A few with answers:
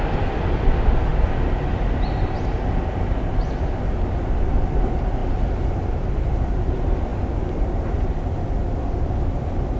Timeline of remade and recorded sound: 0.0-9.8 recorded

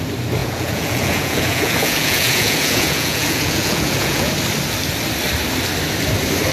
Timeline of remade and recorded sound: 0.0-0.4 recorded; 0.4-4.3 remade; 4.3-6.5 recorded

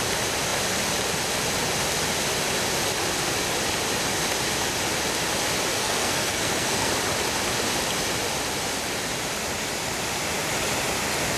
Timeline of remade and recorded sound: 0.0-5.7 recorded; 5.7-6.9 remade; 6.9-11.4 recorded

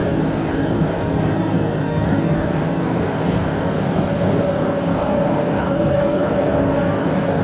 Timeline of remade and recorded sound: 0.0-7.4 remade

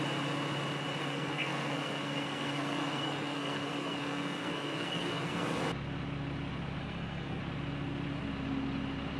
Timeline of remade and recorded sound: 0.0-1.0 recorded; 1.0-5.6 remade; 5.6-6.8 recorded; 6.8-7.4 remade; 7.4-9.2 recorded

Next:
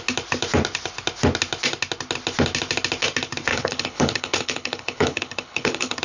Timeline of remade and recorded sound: 0.0-3.5 recorded; 3.5-6.0 remade